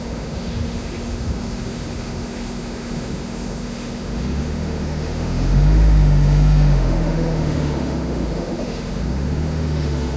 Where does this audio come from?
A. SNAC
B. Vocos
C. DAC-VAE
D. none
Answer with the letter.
C